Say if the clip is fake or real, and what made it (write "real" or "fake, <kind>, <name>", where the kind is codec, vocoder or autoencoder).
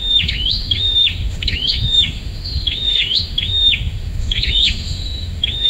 fake, autoencoder, DAC-VAE